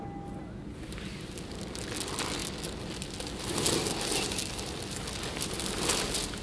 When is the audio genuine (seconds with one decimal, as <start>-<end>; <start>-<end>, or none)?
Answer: 0.0-6.4